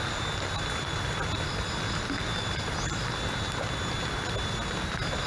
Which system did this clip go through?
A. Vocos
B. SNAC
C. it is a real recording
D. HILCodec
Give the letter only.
C